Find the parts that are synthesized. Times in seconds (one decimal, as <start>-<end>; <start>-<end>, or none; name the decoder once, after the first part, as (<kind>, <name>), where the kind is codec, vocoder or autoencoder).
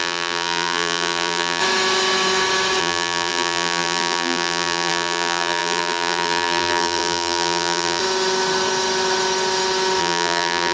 0.0-1.6 (vocoder, BigVGAN v2); 2.8-8.0; 10.0-10.7